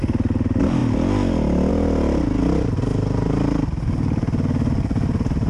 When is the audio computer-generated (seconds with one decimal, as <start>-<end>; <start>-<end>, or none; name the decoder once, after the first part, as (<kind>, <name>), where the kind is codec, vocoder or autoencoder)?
none